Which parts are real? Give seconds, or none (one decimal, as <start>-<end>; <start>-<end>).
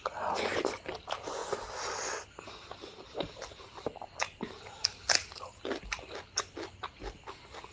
0.0-7.7